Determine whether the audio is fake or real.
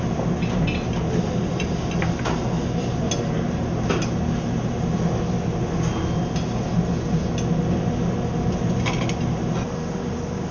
real